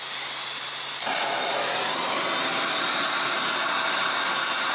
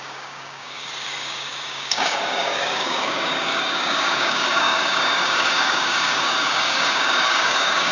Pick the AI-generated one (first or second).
second